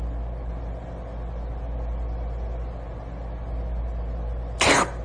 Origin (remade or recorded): recorded